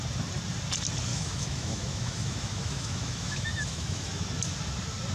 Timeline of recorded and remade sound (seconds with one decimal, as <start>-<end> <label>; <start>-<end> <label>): 0.0-1.1 recorded; 1.1-4.2 remade; 4.2-5.1 recorded